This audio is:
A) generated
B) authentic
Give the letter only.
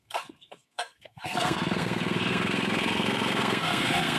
A